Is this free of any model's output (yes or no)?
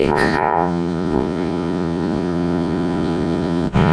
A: no